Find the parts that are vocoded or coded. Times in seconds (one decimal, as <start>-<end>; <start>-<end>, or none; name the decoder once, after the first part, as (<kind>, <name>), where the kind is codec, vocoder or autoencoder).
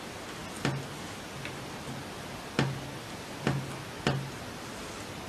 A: none